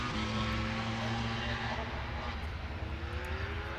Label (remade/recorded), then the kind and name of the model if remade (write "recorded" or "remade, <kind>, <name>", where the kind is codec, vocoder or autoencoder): recorded